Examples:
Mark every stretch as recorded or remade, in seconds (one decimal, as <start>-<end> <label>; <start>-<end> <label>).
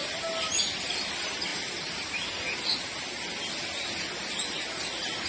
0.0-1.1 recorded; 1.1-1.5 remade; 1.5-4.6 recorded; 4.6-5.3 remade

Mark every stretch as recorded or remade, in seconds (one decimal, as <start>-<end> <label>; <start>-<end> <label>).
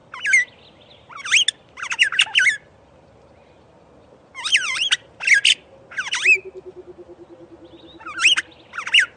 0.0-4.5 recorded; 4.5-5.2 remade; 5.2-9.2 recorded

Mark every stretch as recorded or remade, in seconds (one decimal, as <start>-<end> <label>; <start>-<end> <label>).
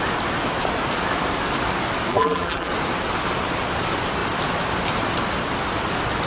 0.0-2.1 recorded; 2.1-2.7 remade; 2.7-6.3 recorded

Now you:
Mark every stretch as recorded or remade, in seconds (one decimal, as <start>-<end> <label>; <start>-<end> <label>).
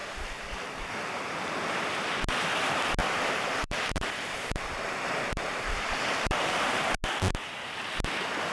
0.0-0.9 remade; 0.9-3.0 recorded; 3.0-6.9 remade; 6.9-8.5 recorded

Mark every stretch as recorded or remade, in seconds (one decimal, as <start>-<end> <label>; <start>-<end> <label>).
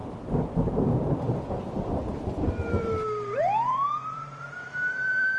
0.0-0.7 remade; 0.7-2.1 recorded; 2.1-5.4 remade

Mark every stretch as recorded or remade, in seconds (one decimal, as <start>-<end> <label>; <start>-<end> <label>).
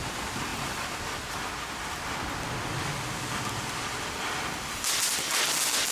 0.0-5.9 recorded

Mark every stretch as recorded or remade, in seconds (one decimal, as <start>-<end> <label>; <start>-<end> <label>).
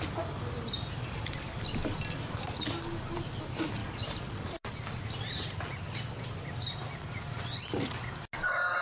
0.0-3.8 recorded; 3.8-4.7 remade; 4.7-8.8 recorded